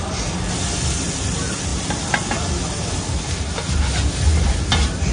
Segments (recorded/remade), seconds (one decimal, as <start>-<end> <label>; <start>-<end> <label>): 0.0-5.1 recorded